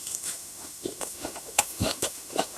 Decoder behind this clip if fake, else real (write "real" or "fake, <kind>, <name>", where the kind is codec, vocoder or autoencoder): fake, autoencoder, DAC-VAE